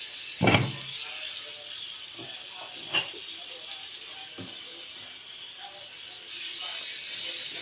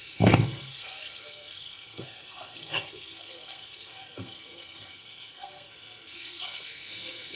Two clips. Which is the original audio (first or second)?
first